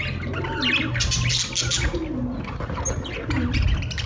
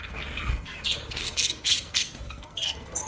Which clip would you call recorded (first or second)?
first